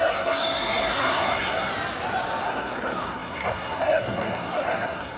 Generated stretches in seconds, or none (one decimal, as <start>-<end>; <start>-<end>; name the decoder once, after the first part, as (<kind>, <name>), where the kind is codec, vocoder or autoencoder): 0.0-1.7 (codec, SNAC); 2.4-5.2